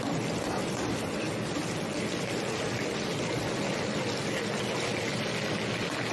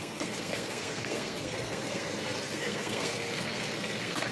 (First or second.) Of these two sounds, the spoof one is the second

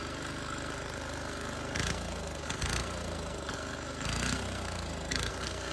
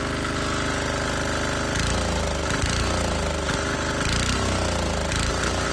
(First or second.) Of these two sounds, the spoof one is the first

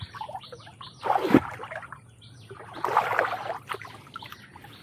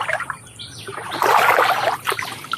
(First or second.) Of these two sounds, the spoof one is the second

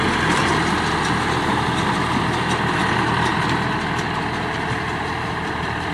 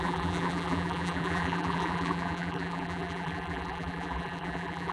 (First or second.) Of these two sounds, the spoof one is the second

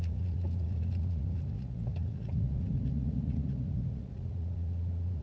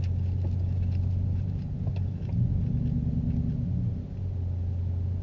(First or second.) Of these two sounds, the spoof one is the first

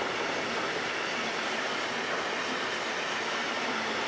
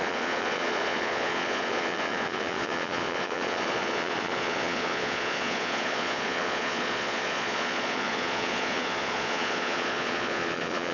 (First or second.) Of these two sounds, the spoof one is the second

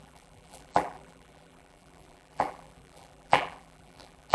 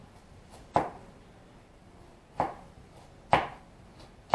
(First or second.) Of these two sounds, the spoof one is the first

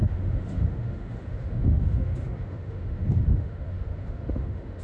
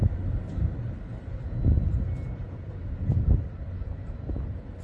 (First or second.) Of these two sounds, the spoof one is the first